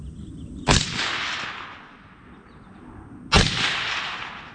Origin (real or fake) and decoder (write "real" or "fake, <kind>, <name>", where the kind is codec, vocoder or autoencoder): real